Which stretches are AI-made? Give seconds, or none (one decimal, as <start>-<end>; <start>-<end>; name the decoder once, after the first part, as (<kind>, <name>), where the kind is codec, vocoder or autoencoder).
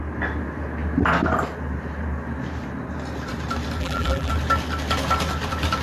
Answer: 3.8-4.3 (vocoder, BigVGAN v2)